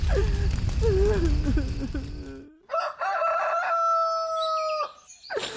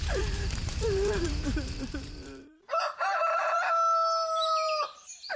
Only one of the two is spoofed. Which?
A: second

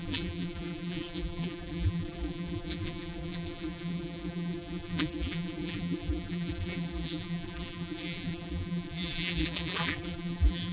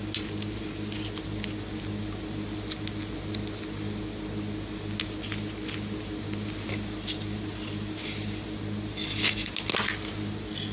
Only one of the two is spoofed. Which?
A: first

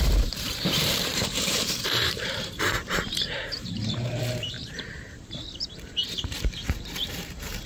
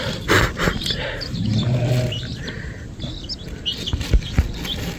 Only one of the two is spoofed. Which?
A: first